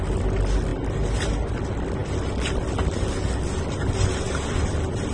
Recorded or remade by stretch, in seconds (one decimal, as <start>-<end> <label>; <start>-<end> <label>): 0.0-5.1 recorded

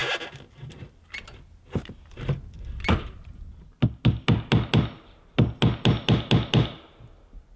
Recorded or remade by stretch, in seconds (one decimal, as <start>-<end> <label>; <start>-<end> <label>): 0.0-7.6 recorded